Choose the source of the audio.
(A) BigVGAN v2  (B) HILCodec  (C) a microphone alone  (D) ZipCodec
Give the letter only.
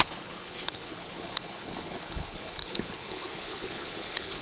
B